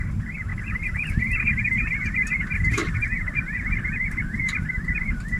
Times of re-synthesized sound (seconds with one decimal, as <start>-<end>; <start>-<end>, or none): 2.8-5.4